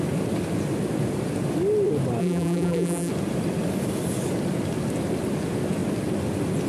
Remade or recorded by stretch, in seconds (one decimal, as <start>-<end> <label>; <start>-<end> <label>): 0.0-2.2 recorded; 2.2-3.1 remade; 3.1-6.7 recorded